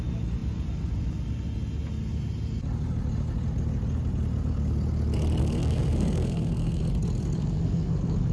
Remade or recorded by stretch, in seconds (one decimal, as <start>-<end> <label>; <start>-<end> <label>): 0.0-5.4 recorded; 5.4-6.8 remade; 6.8-7.4 recorded; 7.4-8.3 remade